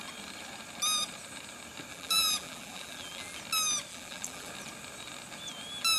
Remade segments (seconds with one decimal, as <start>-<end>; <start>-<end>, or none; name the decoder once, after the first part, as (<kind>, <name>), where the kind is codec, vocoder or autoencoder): 1.9-3.4 (vocoder, BigVGAN v2); 3.9-4.5